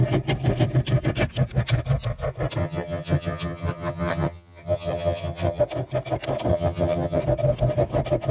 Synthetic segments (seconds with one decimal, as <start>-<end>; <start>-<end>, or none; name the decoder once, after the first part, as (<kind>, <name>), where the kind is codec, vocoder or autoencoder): 2.6-5.6 (vocoder, HiFi-GAN); 6.5-7.2

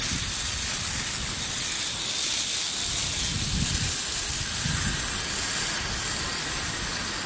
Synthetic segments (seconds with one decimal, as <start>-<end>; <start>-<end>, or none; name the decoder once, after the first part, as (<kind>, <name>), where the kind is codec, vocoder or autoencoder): none

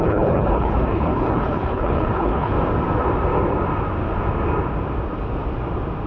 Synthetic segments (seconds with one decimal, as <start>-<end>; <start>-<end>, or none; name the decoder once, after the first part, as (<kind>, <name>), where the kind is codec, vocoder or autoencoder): 0.0-2.5 (codec, HILCodec)